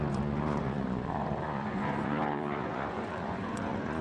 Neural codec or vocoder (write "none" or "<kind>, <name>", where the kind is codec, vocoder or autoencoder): vocoder, Vocos